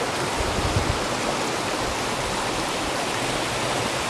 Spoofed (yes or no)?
no